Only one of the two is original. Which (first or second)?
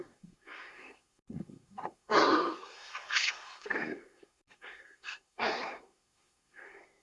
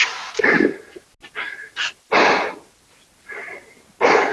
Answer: second